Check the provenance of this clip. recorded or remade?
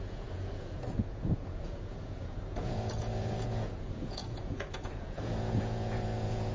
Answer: remade